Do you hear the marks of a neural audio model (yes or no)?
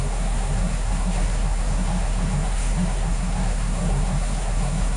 yes